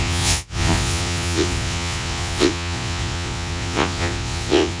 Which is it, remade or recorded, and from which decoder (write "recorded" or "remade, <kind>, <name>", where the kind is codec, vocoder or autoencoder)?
remade, vocoder, Vocos